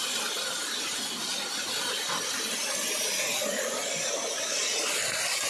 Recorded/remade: recorded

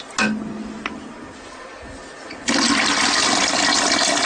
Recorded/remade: recorded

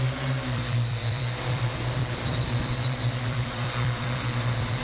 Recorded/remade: remade